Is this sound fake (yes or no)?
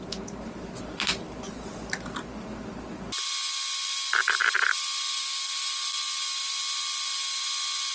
no